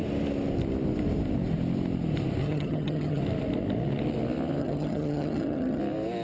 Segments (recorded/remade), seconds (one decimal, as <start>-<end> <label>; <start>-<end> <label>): 0.0-2.4 recorded; 2.4-3.2 remade; 3.2-4.6 recorded; 4.6-5.8 remade; 5.8-6.2 recorded